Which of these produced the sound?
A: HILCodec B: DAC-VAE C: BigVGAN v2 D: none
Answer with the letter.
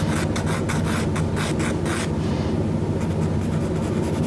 D